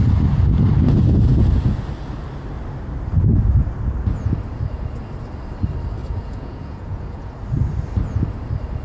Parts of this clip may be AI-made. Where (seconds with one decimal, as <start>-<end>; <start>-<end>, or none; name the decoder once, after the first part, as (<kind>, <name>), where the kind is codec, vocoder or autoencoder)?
6.0-7.3 (vocoder, Vocos)